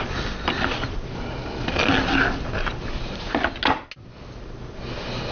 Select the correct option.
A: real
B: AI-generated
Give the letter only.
A